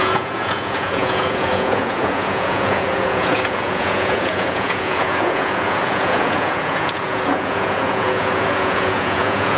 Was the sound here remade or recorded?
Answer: remade